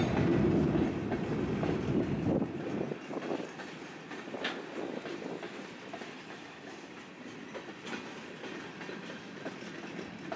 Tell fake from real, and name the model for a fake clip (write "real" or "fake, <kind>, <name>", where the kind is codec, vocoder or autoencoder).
real